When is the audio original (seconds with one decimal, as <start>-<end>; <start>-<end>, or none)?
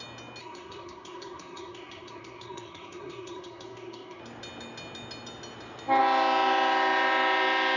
0.0-0.4; 4.2-7.8